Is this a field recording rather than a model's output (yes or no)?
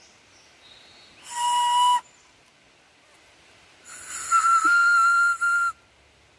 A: yes